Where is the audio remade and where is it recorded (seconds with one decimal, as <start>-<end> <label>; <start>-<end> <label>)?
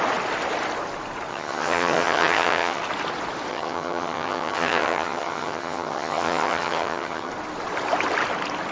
0.0-1.3 recorded; 1.3-2.8 remade; 2.8-3.5 recorded; 3.5-7.3 remade; 7.3-8.7 recorded